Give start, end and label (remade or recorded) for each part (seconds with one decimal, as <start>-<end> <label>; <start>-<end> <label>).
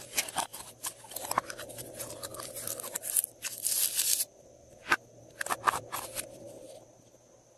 0.0-7.6 recorded